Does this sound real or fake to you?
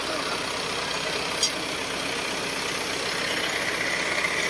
real